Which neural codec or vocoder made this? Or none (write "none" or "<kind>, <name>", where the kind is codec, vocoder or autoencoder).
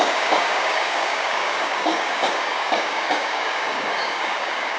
codec, DAC